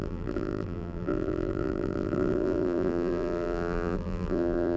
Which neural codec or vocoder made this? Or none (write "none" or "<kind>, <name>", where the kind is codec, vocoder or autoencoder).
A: vocoder, BigVGAN v2